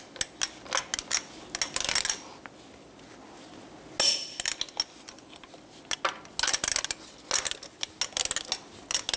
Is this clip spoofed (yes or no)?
no